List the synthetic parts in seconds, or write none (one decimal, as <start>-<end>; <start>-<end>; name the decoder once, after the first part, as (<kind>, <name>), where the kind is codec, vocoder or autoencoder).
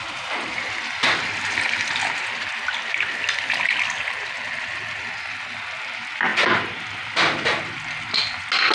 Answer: none